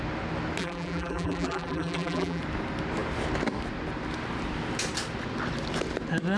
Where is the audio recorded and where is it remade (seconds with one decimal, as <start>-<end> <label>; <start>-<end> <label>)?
0.0-0.6 recorded; 0.6-2.4 remade; 2.4-6.4 recorded